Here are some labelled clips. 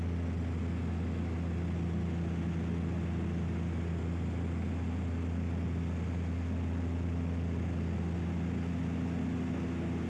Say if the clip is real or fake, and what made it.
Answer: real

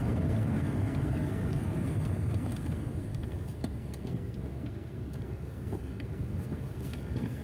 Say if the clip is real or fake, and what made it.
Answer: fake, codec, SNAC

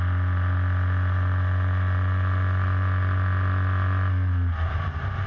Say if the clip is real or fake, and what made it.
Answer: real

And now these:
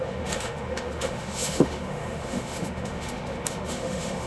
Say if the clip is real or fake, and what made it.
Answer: fake, autoencoder, DAC-VAE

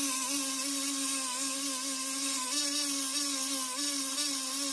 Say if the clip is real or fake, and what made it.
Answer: real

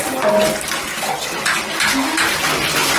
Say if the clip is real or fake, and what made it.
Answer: real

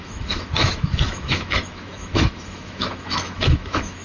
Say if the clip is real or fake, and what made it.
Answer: fake, autoencoder, DAC-VAE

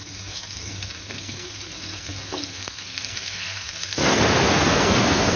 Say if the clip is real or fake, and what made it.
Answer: fake, codec, SNAC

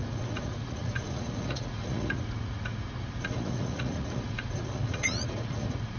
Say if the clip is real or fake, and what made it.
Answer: fake, vocoder, Vocos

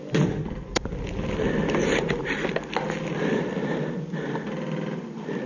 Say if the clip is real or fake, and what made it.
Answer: real